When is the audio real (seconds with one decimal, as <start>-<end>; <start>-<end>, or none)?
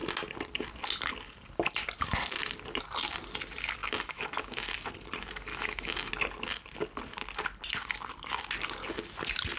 0.0-3.8; 4.7-5.5; 6.1-9.6